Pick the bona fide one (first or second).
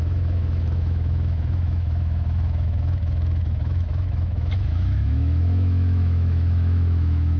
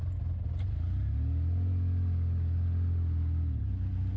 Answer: second